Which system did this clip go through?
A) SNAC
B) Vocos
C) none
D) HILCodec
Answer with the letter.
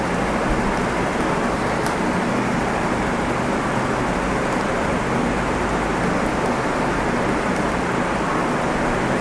C